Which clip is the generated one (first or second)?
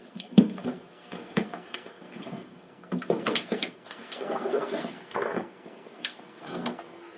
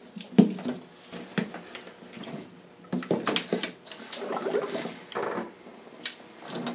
first